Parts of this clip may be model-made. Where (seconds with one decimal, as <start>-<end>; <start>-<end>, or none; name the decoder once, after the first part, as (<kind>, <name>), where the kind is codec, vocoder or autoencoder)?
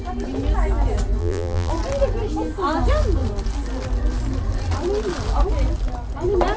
1.2-1.7 (vocoder, BigVGAN v2)